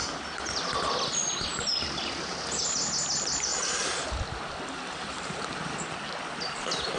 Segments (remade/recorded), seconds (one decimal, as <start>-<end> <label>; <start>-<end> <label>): 0.0-7.0 recorded